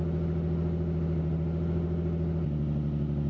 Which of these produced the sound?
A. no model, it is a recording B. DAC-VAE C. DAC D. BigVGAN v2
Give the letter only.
A